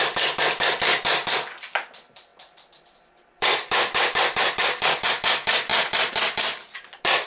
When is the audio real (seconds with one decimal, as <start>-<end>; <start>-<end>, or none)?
0.0-2.3; 5.1-7.3